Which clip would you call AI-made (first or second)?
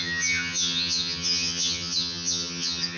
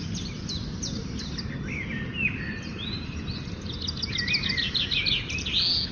first